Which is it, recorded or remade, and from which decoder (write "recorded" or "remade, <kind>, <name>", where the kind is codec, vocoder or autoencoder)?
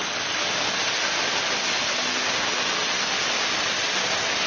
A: recorded